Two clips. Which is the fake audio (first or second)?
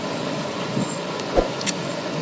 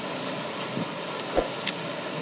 first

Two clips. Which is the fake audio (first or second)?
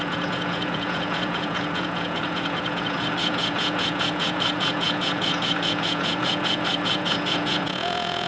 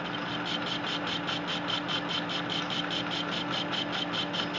first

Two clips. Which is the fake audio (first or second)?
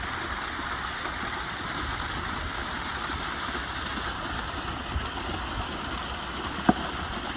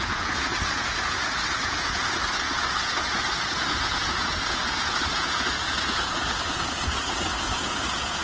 second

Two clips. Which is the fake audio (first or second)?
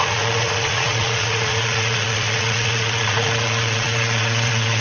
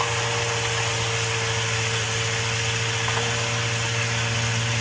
first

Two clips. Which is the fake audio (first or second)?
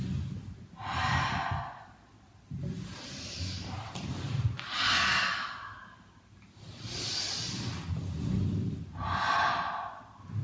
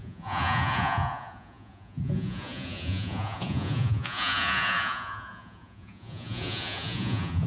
second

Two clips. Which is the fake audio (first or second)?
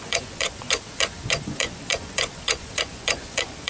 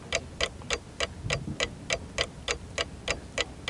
first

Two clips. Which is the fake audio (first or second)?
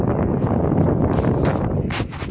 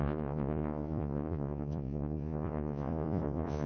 second